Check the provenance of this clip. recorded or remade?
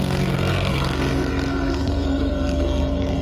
remade